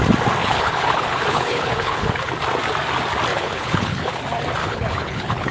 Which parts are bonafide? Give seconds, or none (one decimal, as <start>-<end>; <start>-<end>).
0.0-0.4; 2.3-3.3; 4.1-4.6